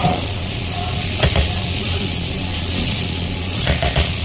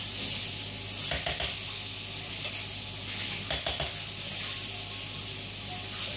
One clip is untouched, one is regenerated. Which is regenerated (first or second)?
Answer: first